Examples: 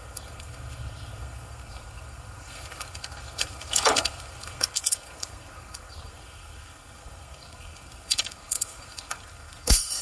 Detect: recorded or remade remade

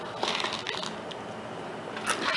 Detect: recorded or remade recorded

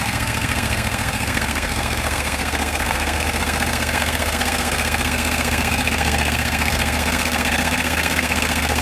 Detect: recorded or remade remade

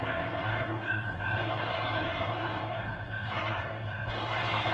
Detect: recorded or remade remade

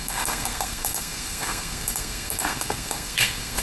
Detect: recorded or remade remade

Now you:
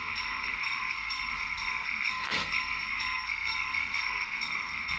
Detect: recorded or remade remade